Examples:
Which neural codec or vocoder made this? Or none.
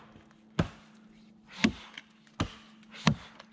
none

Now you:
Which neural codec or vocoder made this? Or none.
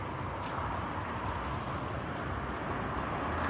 none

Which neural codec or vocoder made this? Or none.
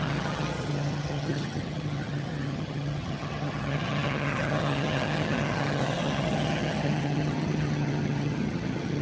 vocoder, HiFi-GAN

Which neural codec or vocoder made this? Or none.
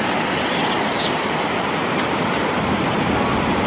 none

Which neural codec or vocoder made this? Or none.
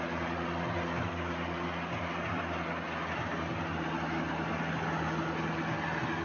none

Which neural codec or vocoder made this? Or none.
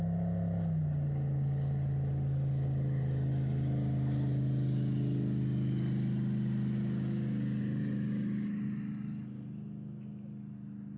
none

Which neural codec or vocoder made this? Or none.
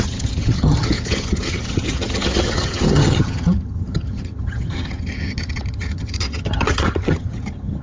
vocoder, HiFi-GAN